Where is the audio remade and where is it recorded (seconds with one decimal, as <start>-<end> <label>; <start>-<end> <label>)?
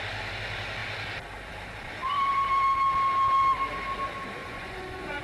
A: 0.0-4.4 recorded; 4.4-5.2 remade